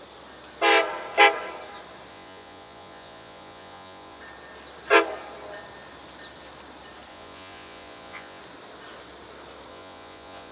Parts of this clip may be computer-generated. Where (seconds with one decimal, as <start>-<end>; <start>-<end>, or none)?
2.1-4.2; 7.1-8.4; 9.7-10.5